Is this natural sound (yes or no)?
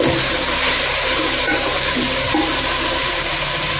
no